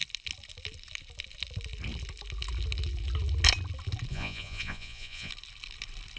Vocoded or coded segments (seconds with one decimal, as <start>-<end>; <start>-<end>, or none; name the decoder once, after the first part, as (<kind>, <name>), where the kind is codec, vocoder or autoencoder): 4.1-5.3 (vocoder, Vocos)